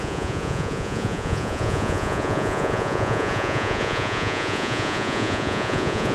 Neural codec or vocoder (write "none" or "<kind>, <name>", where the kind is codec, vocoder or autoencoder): vocoder, Vocos